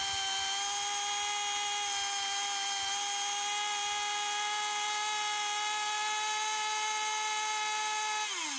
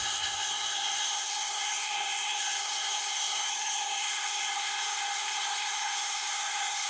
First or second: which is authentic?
first